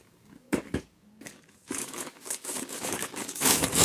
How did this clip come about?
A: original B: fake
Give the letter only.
B